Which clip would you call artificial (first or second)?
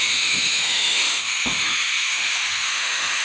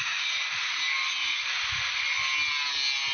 first